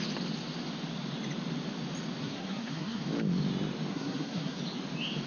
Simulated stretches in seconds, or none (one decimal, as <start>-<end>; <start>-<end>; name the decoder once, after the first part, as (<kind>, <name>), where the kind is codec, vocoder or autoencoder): 2.2-3.0 (codec, SNAC); 3.9-4.6